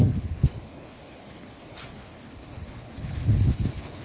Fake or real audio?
fake